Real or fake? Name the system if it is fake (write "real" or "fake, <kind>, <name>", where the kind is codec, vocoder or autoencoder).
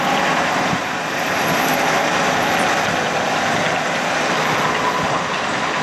real